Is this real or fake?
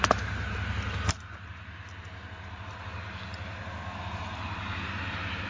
real